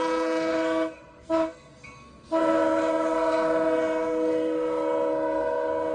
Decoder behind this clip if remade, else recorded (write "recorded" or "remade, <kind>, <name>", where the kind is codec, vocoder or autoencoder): remade, codec, SNAC